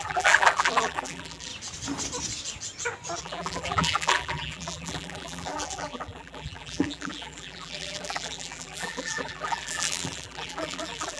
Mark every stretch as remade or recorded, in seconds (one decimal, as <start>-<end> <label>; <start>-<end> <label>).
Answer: 0.0-1.5 remade; 1.5-3.2 recorded; 3.2-11.2 remade